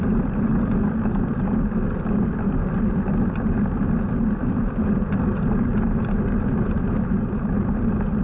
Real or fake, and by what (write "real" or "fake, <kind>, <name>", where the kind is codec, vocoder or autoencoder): real